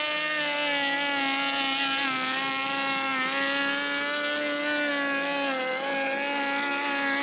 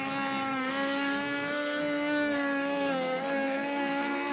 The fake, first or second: second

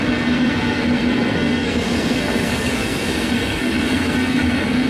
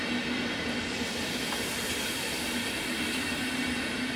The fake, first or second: first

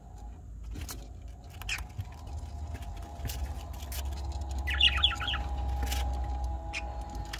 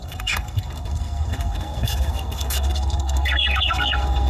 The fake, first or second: second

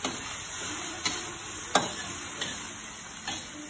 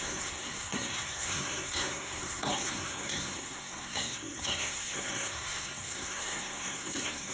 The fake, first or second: second